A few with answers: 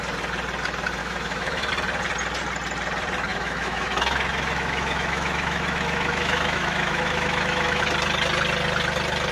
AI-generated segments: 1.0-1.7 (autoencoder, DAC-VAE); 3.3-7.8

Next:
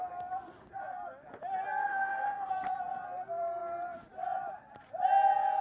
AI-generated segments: 1.8-2.5 (autoencoder, DAC-VAE)